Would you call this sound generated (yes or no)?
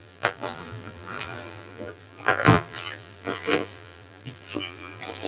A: yes